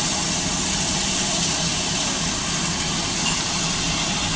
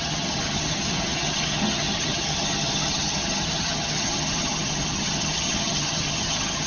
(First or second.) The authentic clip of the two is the first